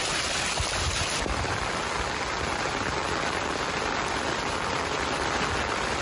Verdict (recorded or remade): recorded